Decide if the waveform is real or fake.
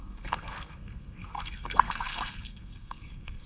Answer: fake